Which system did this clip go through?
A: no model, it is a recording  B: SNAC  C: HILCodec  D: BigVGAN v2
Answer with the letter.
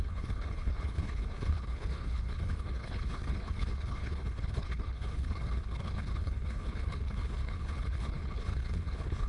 C